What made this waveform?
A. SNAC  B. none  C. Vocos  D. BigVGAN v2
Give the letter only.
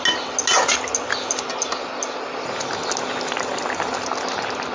B